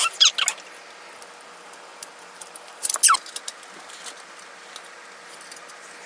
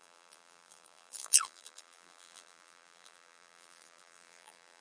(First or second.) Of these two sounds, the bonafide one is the first